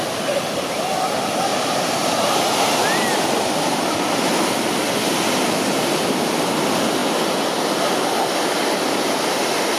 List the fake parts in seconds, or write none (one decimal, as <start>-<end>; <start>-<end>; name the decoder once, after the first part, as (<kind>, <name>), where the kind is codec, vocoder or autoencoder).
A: 1.5-2.4 (vocoder, BigVGAN v2)

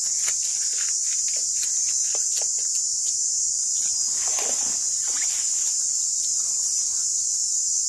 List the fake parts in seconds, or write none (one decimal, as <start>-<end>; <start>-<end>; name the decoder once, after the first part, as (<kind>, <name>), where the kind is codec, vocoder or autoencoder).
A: none

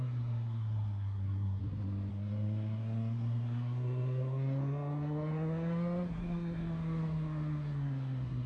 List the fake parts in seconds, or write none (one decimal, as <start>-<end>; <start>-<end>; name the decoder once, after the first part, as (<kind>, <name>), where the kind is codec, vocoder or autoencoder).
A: 0.0-1.6 (codec, SNAC); 2.1-8.5

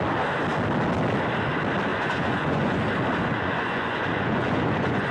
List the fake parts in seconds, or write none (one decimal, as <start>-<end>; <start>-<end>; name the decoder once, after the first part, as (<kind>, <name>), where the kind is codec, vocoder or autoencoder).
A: 1.9-2.8 (vocoder, Vocos); 3.2-5.1

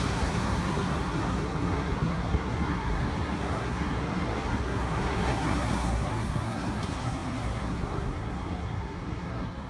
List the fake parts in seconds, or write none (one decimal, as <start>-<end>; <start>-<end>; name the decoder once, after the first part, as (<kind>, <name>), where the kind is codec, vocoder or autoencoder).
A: 0.0-9.7 (codec, SNAC)

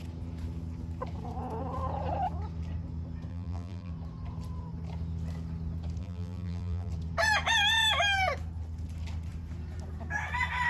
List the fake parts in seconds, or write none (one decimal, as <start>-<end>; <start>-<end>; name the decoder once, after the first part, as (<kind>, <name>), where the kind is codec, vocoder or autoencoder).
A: 3.3-3.9 (vocoder, BigVGAN v2); 6.0-6.9

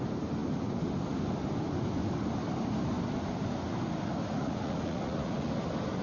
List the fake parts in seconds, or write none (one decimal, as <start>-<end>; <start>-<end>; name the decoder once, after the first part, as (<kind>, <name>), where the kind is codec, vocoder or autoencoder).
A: 4.4-5.5 (vocoder, Vocos)

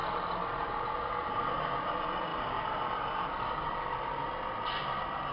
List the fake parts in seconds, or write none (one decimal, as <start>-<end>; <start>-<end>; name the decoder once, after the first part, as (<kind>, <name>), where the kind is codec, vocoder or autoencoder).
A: none